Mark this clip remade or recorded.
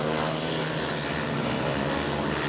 recorded